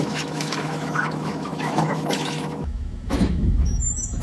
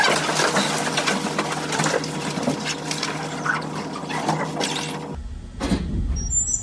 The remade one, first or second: first